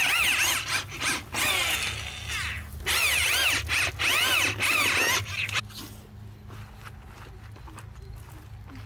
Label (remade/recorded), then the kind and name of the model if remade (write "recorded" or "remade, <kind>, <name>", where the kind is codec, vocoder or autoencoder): recorded